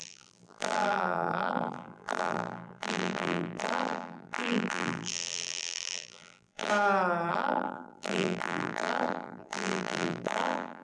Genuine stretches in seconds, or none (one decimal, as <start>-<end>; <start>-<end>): 6.7-7.3